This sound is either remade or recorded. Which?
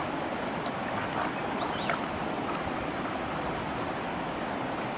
recorded